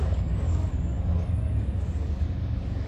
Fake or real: fake